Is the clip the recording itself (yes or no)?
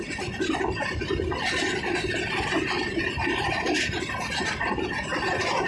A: yes